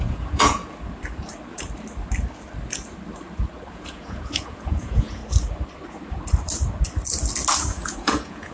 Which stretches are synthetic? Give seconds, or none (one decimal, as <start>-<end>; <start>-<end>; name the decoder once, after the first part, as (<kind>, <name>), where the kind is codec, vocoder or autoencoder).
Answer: 0.0-0.6 (vocoder, Vocos); 3.7-5.2; 7.7-8.5